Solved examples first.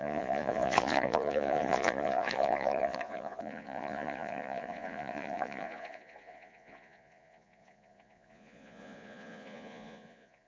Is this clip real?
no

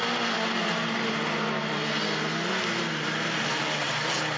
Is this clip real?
yes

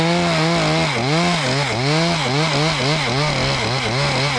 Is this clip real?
yes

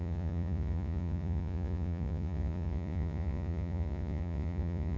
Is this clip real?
no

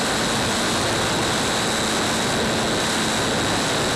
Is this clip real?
yes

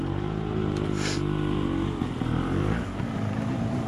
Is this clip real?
yes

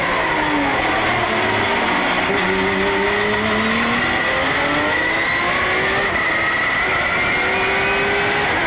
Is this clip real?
yes